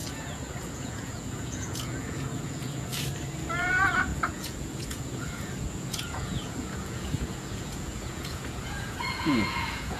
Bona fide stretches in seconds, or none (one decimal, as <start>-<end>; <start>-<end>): 2.9-3.6